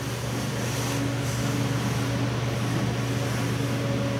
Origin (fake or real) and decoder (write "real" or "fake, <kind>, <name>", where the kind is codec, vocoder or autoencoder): real